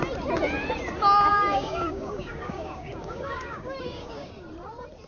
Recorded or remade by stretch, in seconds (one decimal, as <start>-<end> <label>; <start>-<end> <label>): 0.0-1.3 recorded; 1.3-4.3 remade; 4.3-5.1 recorded